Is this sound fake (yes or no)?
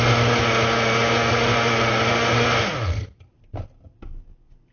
no